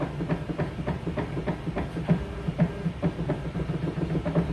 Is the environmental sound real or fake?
real